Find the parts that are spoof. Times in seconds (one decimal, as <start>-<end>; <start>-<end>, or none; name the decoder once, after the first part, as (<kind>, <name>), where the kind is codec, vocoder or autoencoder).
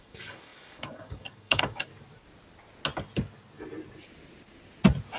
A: 0.0-1.9 (codec, DAC)